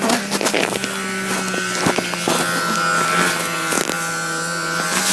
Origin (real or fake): real